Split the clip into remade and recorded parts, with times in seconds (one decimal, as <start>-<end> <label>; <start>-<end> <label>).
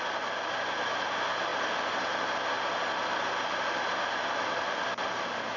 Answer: 0.0-5.6 recorded